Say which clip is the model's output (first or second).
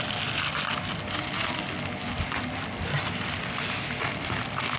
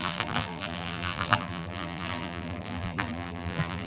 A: second